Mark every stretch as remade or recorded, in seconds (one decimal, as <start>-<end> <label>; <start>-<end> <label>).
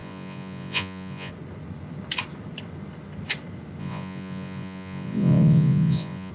0.0-1.3 remade; 1.3-3.8 recorded; 3.8-6.3 remade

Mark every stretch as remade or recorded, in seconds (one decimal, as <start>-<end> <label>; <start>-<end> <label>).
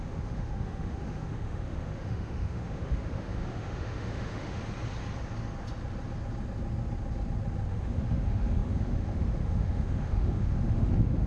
0.0-4.6 remade; 4.6-7.7 recorded; 7.7-11.3 remade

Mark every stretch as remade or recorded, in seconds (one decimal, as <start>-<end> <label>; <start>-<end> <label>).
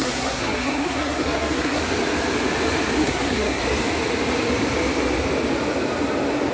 0.0-1.8 remade; 1.8-3.0 recorded; 3.0-3.6 remade; 3.6-6.5 recorded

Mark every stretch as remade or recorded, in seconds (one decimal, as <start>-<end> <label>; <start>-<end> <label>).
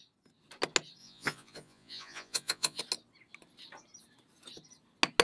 0.0-1.0 recorded; 1.0-2.8 remade; 2.8-5.2 recorded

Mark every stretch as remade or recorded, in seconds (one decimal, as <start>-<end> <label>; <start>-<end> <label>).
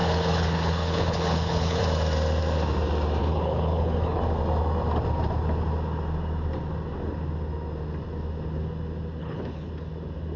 0.0-1.8 remade; 1.8-3.2 recorded; 3.2-4.2 remade; 4.2-9.2 recorded; 9.2-9.7 remade; 9.7-10.4 recorded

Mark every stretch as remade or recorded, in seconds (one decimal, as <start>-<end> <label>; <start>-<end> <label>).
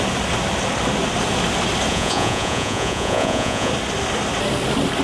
0.0-1.9 recorded; 1.9-3.7 remade; 3.7-5.0 recorded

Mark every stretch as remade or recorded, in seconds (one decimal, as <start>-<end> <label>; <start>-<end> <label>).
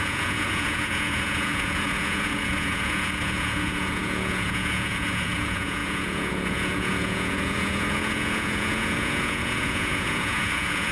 0.0-10.9 remade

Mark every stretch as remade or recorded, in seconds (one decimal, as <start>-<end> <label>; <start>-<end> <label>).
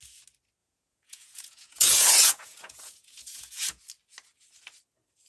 0.0-0.6 recorded; 0.6-3.8 remade; 3.8-5.3 recorded